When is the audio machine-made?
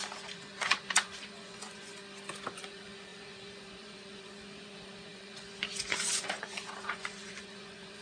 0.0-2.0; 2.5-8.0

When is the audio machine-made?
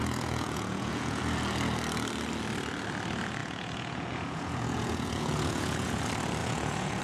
0.0-1.2; 3.4-6.0; 6.4-7.0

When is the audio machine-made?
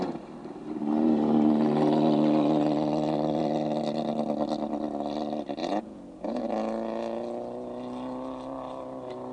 5.6-6.4